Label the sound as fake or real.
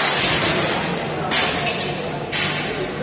real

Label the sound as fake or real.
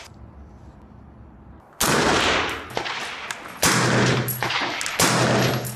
real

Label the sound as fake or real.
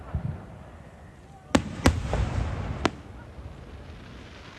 real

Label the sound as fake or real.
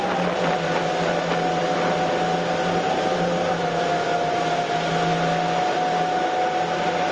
real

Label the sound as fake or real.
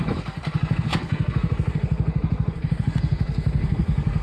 fake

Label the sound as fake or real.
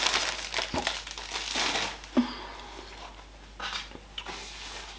real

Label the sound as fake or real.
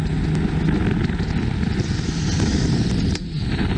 real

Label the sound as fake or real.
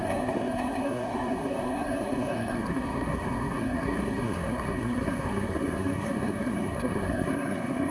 fake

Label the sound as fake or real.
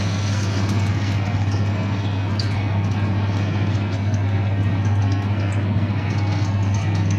fake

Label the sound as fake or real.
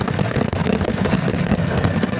fake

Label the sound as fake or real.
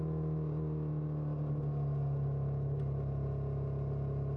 real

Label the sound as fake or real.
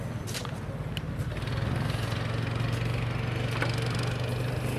real